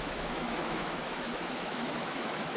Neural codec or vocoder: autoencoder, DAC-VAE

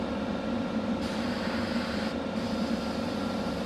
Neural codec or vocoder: none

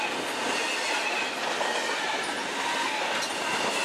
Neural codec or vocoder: none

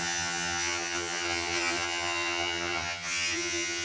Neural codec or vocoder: vocoder, HiFi-GAN